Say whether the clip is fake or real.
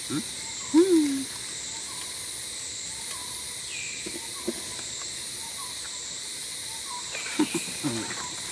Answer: real